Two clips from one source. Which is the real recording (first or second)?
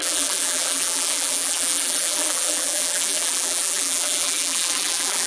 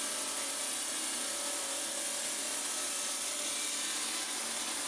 second